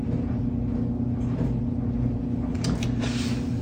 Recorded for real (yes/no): yes